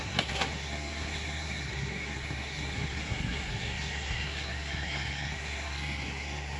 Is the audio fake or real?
fake